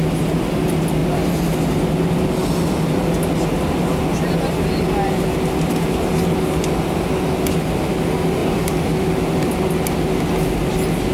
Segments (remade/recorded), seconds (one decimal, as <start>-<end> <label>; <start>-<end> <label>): 0.0-8.4 recorded; 8.4-10.1 remade; 10.1-11.1 recorded

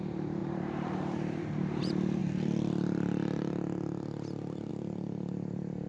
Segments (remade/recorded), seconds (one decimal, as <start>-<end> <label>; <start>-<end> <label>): 0.0-2.2 remade; 2.2-4.7 recorded; 4.7-5.9 remade

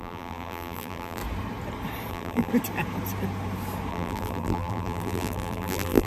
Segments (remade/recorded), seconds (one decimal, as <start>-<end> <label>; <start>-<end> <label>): 0.0-1.2 remade; 1.2-2.1 recorded; 2.1-2.5 remade; 2.5-3.9 recorded; 3.9-6.1 remade

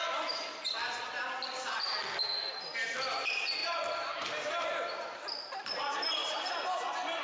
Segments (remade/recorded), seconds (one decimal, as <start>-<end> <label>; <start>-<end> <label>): 0.0-3.6 recorded; 3.6-4.7 remade; 4.7-7.2 recorded